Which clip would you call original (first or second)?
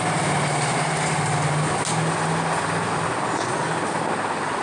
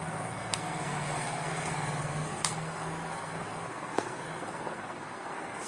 first